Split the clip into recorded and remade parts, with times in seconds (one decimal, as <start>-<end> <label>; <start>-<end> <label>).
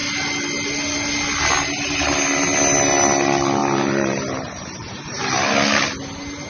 0.0-3.6 recorded; 3.6-5.2 remade; 5.2-6.5 recorded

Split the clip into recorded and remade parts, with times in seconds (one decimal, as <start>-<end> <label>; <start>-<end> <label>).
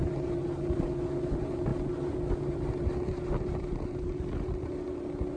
0.0-5.4 recorded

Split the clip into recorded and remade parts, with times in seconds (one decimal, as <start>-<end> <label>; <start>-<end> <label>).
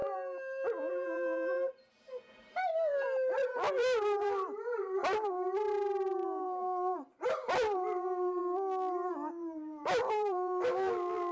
0.0-0.9 recorded; 0.9-1.9 remade; 1.9-3.8 recorded; 3.8-8.4 remade; 8.4-9.1 recorded; 9.1-11.3 remade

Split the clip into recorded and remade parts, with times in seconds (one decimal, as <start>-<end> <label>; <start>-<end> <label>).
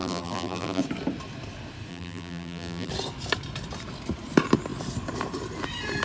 0.0-0.8 remade; 0.8-1.9 recorded; 1.9-2.9 remade; 2.9-6.0 recorded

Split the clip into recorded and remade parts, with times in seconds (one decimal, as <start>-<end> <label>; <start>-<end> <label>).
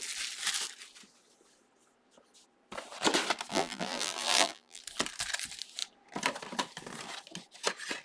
0.0-3.5 recorded; 3.5-4.8 remade; 4.8-8.0 recorded